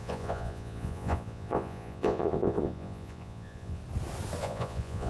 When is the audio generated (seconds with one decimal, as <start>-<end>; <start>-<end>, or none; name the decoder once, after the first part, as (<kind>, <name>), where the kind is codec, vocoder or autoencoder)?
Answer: 0.0-3.8 (vocoder, Vocos); 4.4-5.1